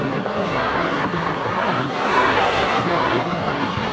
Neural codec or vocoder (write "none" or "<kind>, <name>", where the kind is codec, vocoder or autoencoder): codec, SNAC